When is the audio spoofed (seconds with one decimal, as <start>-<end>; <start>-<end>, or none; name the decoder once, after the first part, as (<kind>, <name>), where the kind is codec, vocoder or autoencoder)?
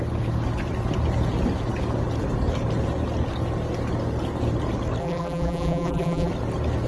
5.0-6.3 (vocoder, BigVGAN v2)